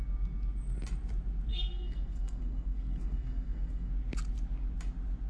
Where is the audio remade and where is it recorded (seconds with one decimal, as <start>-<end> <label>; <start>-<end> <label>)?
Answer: 0.0-1.5 recorded; 1.5-3.9 remade; 3.9-5.3 recorded